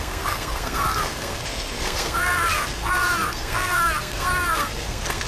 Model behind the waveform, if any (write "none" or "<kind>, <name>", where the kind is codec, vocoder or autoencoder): codec, SNAC